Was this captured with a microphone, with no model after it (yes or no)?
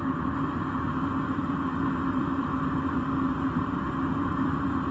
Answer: no